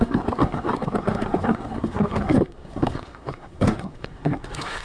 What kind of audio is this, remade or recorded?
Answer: remade